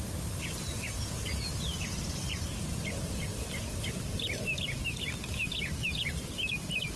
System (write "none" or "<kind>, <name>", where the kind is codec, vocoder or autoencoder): vocoder, BigVGAN v2